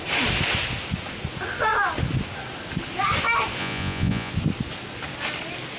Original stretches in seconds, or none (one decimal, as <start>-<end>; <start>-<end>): 0.0-3.6; 4.3-5.8